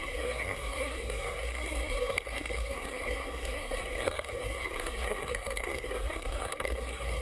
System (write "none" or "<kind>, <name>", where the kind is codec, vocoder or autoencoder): codec, SNAC